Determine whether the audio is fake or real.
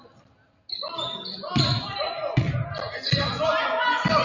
real